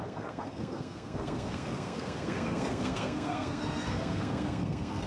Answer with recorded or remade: remade